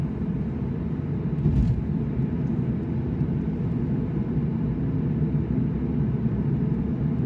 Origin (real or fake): real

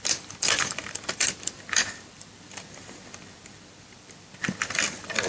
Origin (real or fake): fake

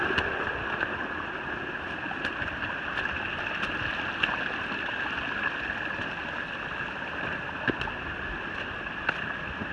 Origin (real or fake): real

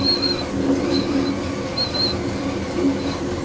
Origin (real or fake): real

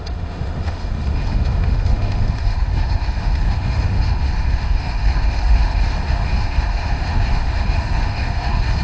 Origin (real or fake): fake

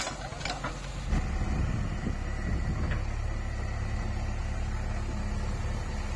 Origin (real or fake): real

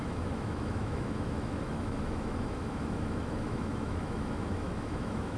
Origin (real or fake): fake